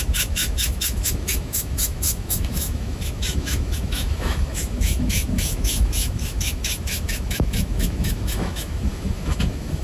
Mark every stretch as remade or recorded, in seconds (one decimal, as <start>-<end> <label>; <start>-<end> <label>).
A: 0.0-9.8 remade